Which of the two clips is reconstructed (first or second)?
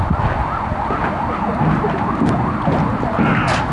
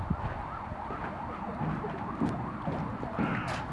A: second